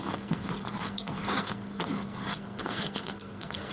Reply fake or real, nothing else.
fake